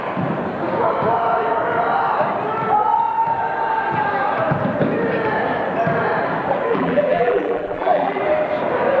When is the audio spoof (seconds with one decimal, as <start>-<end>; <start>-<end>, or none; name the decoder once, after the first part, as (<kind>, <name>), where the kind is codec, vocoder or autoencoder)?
6.7-8.2 (vocoder, BigVGAN v2)